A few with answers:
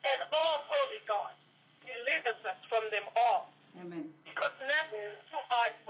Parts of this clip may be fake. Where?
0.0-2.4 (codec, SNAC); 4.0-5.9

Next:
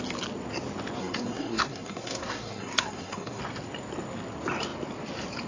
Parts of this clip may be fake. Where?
1.0-3.4 (codec, SNAC)

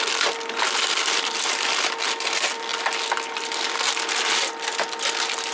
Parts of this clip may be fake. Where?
none

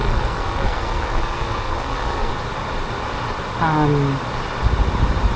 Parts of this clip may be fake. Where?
0.0-2.3 (codec, SNAC)